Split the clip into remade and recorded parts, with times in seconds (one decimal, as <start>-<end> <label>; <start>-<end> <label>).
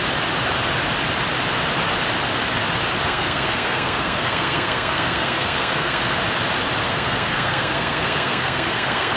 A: 0.0-3.1 recorded; 3.1-6.2 remade; 6.2-6.8 recorded; 6.8-9.2 remade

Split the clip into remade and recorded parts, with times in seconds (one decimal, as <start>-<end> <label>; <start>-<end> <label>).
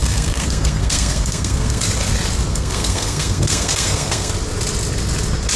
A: 0.0-1.8 remade; 1.8-2.5 recorded; 2.5-4.3 remade; 4.3-5.6 recorded